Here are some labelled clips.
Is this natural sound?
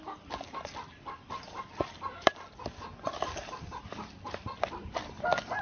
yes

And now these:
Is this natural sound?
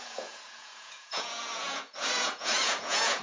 no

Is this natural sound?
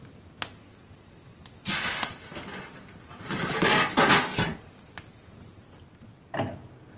yes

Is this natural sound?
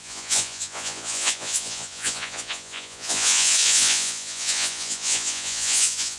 no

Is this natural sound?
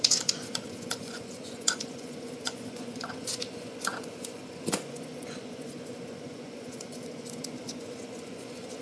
no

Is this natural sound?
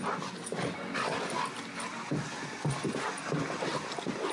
yes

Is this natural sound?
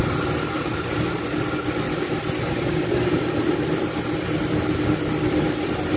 yes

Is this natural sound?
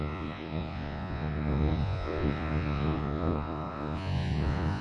no